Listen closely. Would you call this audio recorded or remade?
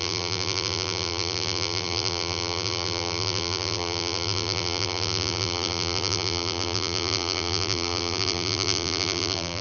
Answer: remade